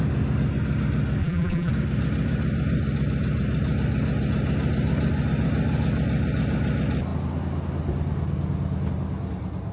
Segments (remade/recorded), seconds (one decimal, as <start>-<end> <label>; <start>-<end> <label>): 0.0-1.2 recorded; 1.2-1.7 remade; 1.7-9.7 recorded